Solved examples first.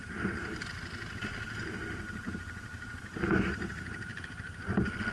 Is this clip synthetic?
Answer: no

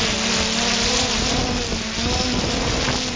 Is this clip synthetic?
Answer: no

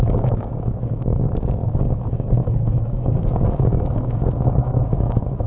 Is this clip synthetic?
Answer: yes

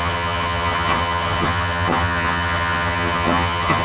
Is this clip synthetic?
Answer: yes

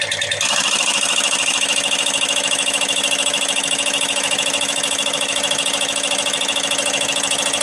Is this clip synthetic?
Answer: no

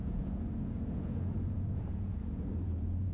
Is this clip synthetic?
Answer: yes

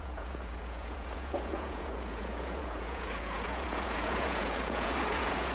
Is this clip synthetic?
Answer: yes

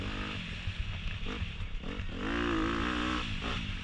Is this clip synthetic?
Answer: no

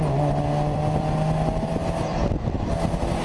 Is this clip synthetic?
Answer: yes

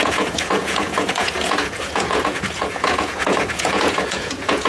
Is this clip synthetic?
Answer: yes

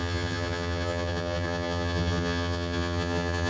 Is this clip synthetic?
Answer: yes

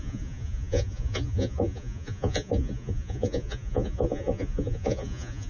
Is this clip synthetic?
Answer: yes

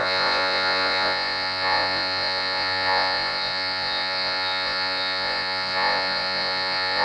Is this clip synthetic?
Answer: yes